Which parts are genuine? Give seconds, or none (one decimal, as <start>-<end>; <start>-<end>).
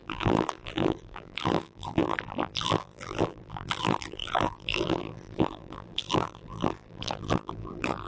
none